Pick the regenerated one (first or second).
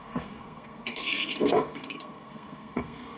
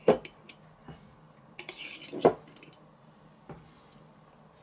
first